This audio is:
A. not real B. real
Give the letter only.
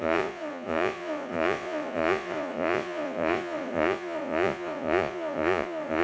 A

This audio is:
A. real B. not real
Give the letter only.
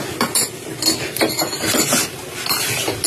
A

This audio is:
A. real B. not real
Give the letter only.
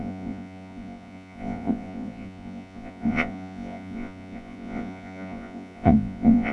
B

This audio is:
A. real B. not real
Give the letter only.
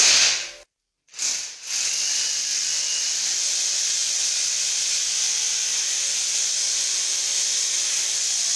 A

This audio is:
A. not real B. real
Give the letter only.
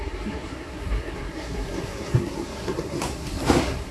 A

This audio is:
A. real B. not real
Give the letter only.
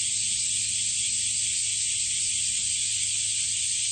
A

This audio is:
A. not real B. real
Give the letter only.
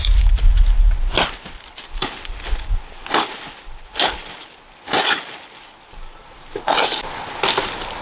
B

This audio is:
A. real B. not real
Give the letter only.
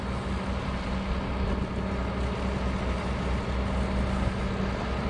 A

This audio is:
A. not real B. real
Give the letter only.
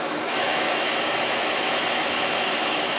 A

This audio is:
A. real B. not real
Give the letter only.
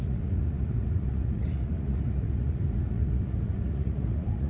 B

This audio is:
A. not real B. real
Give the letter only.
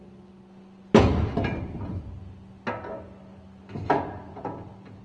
B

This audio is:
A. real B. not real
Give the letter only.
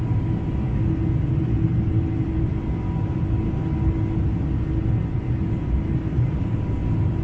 A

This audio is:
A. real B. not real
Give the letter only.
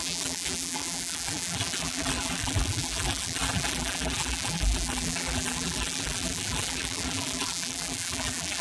B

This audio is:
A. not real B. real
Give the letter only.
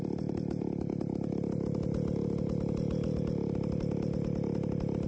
B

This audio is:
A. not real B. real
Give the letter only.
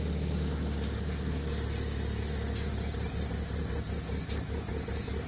B